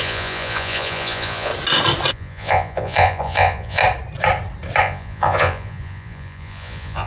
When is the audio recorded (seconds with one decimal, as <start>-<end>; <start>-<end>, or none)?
1.5-2.1; 3.8-4.8